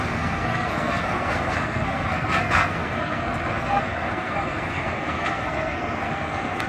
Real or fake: fake